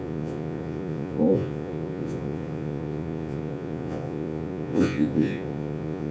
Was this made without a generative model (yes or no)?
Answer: no